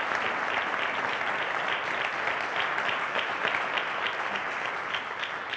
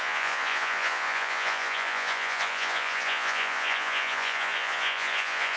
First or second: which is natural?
first